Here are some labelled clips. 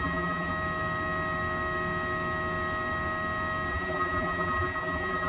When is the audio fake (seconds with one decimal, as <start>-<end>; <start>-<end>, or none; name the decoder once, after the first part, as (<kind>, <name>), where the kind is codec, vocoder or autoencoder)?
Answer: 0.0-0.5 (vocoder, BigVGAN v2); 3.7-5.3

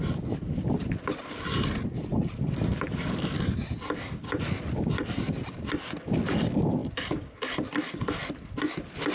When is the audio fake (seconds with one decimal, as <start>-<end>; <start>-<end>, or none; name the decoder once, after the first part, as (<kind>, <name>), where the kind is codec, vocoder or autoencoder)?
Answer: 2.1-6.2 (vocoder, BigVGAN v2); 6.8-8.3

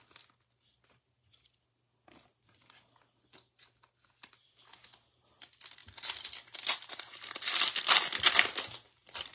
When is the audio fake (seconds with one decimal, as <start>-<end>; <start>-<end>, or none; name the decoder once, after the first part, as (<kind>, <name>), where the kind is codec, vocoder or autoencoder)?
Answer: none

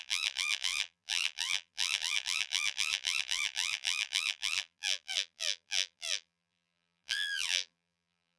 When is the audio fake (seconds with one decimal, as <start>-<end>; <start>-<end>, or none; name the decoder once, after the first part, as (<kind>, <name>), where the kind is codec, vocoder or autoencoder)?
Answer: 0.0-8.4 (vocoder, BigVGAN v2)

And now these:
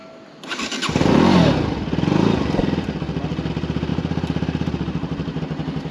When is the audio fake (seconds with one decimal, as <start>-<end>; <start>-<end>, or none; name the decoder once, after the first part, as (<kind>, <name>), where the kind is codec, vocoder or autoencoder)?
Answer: 3.9-5.4 (vocoder, BigVGAN v2)

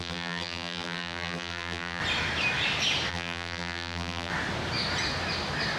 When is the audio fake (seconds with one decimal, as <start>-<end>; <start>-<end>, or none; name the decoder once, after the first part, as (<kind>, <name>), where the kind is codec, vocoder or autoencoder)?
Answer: 0.0-2.0 (vocoder, BigVGAN v2); 3.1-4.3